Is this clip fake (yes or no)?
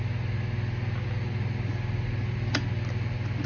no